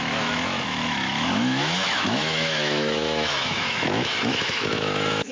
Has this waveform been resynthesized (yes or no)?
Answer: yes